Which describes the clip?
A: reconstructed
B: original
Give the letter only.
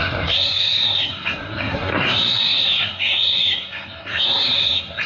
A